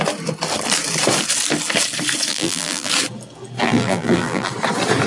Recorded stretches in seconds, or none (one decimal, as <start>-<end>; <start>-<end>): 0.0-2.3; 2.9-3.6; 4.5-5.1